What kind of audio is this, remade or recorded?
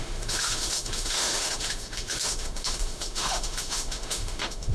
remade